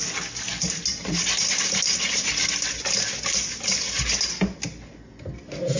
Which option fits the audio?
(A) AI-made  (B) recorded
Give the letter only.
B